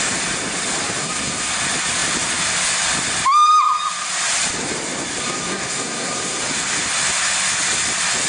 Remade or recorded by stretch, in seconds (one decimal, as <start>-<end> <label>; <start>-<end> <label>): 0.0-1.0 recorded; 1.0-1.5 remade; 1.5-5.2 recorded; 5.2-6.4 remade; 6.4-8.3 recorded